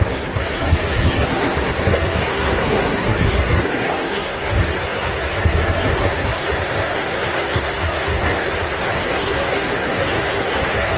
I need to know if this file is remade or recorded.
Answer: remade